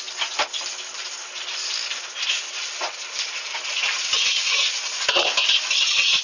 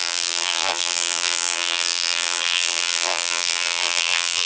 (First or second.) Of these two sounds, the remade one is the second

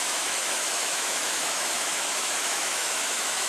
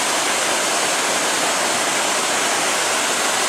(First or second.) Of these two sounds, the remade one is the first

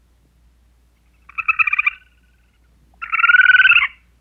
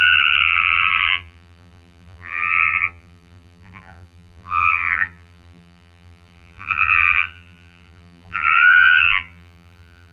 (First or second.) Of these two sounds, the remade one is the second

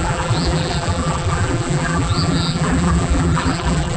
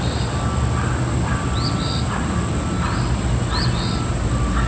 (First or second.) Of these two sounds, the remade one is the first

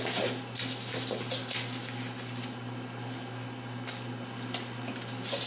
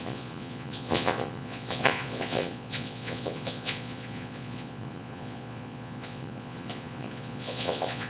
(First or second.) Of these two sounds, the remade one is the second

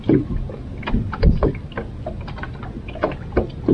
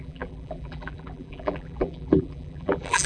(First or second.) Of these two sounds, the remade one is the second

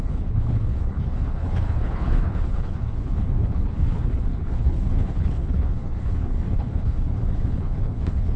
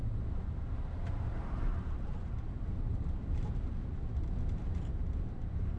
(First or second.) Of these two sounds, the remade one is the first